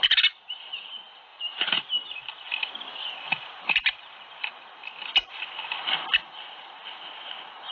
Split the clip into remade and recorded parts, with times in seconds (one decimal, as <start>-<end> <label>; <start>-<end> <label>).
0.0-1.3 recorded; 1.3-2.2 remade; 2.2-2.9 recorded; 2.9-4.5 remade; 4.5-7.7 recorded